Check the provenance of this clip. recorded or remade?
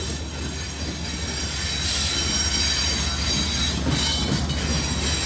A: recorded